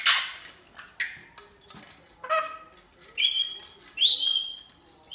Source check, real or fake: real